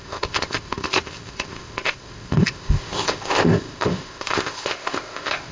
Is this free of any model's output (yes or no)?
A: no